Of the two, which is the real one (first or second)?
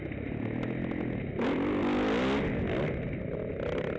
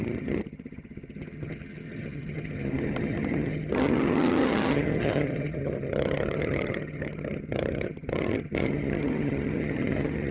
first